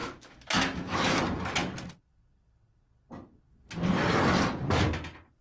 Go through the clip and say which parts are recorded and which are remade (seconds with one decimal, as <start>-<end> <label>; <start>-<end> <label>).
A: 0.0-1.2 remade; 1.2-5.4 recorded